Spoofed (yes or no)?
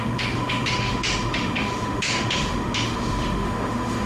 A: yes